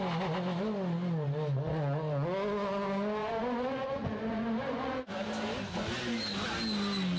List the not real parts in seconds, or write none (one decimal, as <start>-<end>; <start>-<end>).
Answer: 3.2-5.1